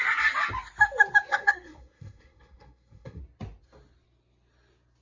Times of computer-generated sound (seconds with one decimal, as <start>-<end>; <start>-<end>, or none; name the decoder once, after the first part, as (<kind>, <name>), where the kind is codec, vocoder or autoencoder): 1.3-3.2 (codec, SNAC)